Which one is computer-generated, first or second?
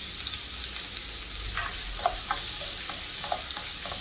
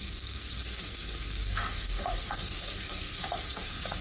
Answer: second